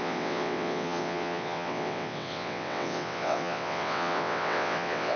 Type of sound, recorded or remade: remade